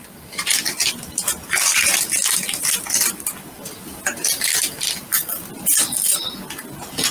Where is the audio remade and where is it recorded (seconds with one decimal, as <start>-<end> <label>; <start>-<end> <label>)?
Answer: 0.0-7.1 recorded

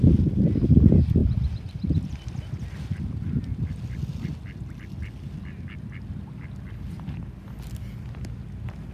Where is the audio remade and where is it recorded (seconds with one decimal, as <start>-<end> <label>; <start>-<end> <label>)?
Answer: 0.0-8.9 recorded

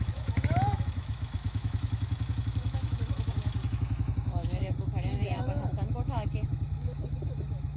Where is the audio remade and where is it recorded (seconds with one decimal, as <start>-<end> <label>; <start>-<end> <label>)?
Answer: 0.0-7.8 remade

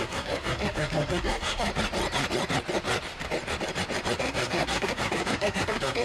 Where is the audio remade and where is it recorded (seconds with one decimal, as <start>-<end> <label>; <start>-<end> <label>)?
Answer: 0.0-1.7 remade; 1.7-4.2 recorded; 4.2-6.0 remade

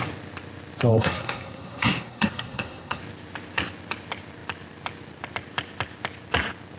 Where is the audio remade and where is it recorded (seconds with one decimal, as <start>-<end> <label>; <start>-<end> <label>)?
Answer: 0.0-0.9 recorded; 0.9-3.0 remade; 3.0-6.8 recorded

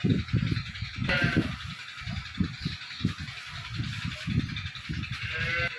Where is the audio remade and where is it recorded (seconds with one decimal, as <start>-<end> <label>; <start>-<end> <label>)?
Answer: 0.0-5.8 recorded

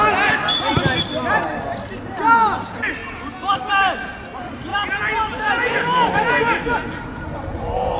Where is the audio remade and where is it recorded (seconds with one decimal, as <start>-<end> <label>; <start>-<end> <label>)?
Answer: 0.0-8.0 recorded